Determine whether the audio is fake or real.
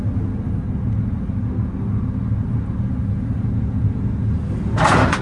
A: real